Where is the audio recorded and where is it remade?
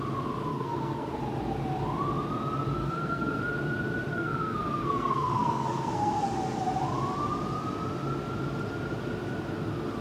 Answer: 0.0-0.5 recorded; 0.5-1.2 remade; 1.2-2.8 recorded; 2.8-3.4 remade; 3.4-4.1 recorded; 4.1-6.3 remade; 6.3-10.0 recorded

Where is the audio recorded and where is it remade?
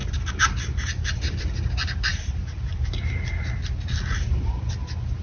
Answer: 0.0-5.2 recorded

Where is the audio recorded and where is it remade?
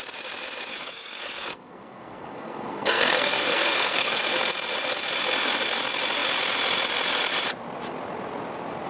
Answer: 0.0-0.7 recorded; 0.7-4.2 remade; 4.2-8.9 recorded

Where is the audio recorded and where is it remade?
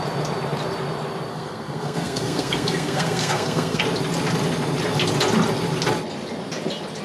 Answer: 0.0-1.3 recorded; 1.3-3.8 remade; 3.8-7.0 recorded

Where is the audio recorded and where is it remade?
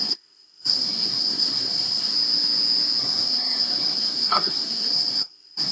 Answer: 0.0-2.1 remade; 2.1-3.0 recorded; 3.0-5.7 remade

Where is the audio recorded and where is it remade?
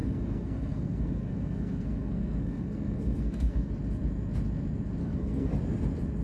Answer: 0.0-3.7 remade; 3.7-5.0 recorded; 5.0-5.5 remade; 5.5-6.2 recorded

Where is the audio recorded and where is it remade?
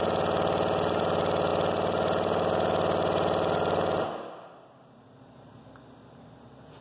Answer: 0.0-6.8 recorded